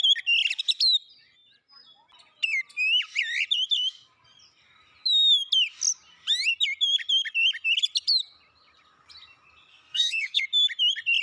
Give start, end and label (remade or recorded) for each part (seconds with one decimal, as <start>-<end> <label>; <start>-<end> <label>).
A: 0.0-9.7 recorded; 9.7-10.4 remade; 10.4-11.2 recorded

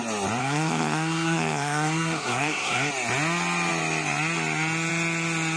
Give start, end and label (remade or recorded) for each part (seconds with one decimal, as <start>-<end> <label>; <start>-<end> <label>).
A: 0.0-0.4 recorded; 0.4-2.9 remade; 2.9-5.6 recorded

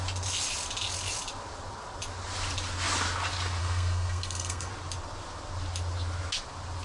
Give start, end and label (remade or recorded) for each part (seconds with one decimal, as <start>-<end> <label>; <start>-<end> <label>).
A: 0.0-3.6 recorded; 3.6-4.7 remade; 4.7-6.8 recorded

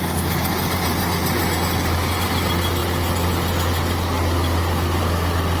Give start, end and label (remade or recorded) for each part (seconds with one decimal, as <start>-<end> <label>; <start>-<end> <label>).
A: 0.0-5.6 recorded

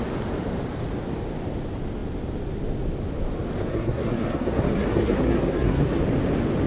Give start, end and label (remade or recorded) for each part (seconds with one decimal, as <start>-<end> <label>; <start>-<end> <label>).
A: 0.0-3.7 recorded; 3.7-6.0 remade; 6.0-6.7 recorded

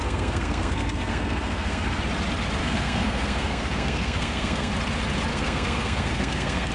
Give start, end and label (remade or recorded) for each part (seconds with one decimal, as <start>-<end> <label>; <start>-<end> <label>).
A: 0.0-2.0 remade; 2.0-2.6 recorded; 2.6-4.7 remade; 4.7-5.3 recorded; 5.3-6.7 remade

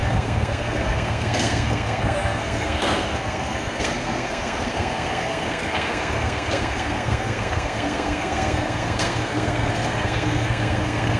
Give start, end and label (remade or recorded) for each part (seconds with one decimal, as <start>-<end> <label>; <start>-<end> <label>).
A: 0.0-11.2 remade

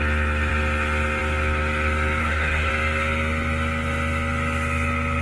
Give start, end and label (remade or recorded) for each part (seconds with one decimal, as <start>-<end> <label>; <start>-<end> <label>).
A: 0.0-2.2 recorded; 2.2-2.7 remade; 2.7-5.2 recorded